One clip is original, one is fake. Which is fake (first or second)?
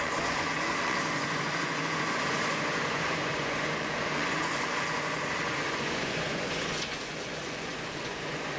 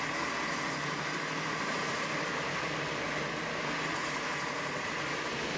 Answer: first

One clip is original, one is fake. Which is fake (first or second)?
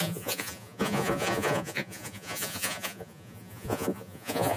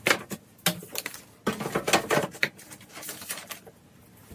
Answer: first